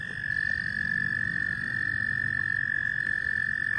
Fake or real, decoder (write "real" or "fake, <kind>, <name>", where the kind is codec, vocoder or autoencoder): real